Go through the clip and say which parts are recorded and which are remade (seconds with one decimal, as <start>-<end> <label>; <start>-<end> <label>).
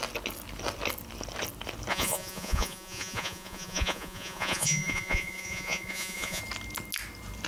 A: 0.0-1.9 recorded; 1.9-6.4 remade; 6.4-7.5 recorded